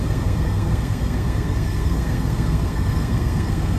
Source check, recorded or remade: remade